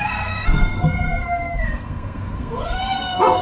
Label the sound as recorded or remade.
remade